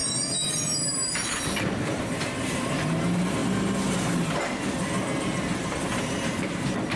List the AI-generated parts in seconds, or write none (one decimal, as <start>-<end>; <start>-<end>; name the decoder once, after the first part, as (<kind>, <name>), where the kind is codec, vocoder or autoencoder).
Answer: 0.0-3.4 (vocoder, BigVGAN v2); 5.6-7.0